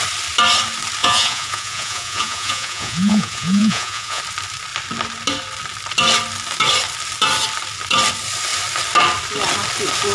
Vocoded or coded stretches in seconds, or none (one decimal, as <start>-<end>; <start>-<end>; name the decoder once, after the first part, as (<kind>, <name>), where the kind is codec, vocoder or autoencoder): 1.0-4.2 (vocoder, Vocos)